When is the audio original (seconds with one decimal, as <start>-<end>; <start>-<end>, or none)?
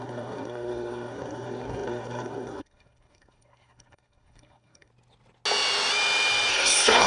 4.9-6.5